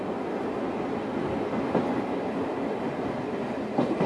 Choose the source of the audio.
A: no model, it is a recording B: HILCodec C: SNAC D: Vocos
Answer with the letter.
A